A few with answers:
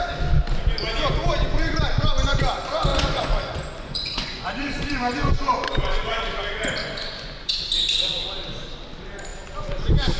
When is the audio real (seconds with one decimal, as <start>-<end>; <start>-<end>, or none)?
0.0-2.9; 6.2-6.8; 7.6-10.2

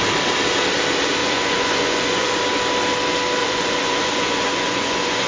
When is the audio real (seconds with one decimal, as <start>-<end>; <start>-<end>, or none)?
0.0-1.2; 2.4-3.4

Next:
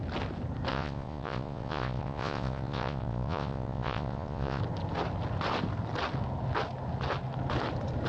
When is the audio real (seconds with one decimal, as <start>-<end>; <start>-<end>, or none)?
0.0-0.7; 4.6-8.1

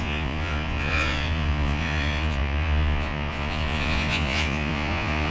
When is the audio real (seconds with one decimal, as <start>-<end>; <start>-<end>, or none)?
none